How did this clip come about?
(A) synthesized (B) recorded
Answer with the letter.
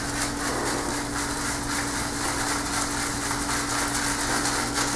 B